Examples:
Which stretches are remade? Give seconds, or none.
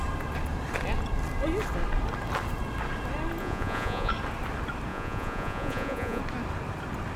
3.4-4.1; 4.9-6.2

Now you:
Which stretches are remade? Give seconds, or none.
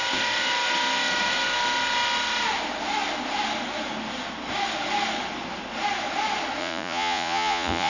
6.6-7.9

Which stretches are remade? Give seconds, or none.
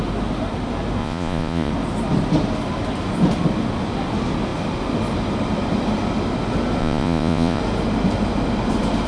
1.0-1.7; 6.8-7.6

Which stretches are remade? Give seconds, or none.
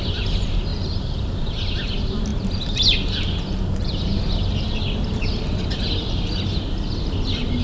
none